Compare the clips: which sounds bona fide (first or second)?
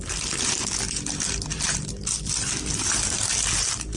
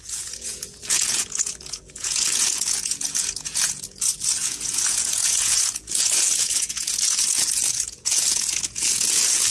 first